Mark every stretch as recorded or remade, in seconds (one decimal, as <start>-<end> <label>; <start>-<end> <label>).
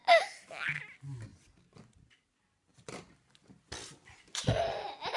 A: 0.0-1.3 recorded; 1.3-4.4 remade; 4.4-5.2 recorded